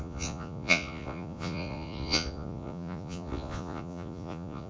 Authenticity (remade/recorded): remade